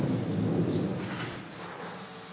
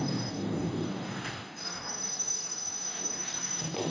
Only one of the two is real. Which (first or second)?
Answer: first